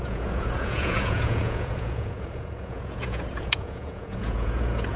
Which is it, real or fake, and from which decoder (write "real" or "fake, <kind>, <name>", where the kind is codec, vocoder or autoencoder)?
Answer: fake, vocoder, Vocos